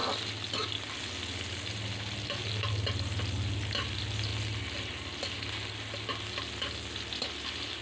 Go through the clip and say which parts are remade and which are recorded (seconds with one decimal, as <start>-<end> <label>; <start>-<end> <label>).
0.0-7.8 recorded